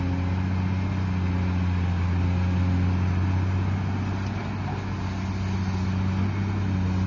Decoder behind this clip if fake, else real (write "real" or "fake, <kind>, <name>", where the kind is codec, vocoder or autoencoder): real